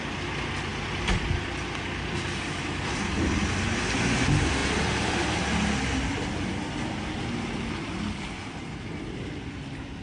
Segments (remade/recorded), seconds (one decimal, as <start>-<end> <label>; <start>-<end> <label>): 0.0-10.0 recorded